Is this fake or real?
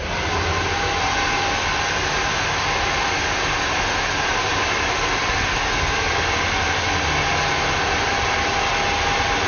real